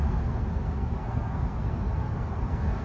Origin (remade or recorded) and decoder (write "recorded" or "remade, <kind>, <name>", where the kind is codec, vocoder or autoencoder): remade, codec, SNAC